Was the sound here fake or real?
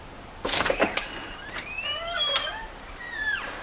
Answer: real